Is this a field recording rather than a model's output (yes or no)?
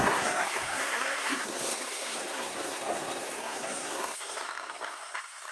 no